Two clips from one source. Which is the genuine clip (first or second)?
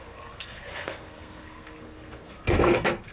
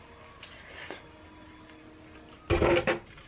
second